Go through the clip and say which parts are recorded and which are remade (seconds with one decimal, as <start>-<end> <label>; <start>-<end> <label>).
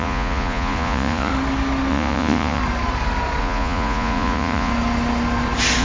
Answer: 0.0-1.3 remade; 1.3-1.9 recorded; 1.9-2.6 remade; 2.6-3.4 recorded; 3.4-4.7 remade; 4.7-5.8 recorded